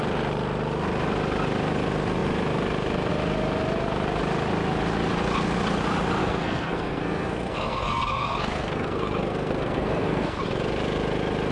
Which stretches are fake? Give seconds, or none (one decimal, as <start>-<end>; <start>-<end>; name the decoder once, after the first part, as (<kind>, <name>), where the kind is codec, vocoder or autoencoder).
6.2-10.4 (codec, SNAC)